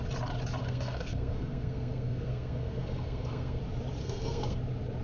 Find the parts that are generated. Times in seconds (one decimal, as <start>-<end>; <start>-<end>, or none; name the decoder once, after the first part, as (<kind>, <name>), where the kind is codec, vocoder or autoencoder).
0.6-3.6 (codec, SNAC); 4.0-4.6